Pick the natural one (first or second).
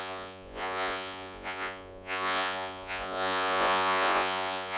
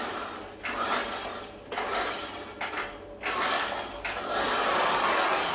second